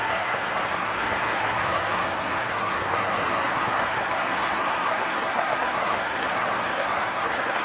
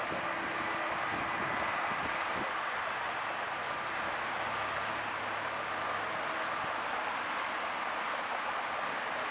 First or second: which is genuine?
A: second